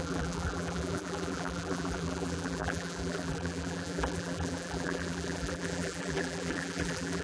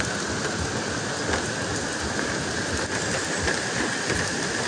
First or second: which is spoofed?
first